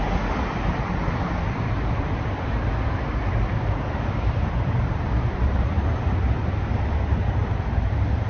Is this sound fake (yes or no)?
yes